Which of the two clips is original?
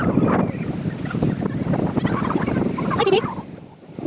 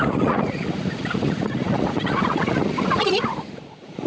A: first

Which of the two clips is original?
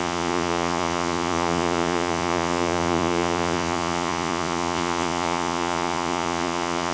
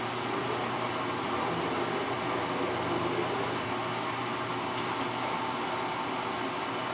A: second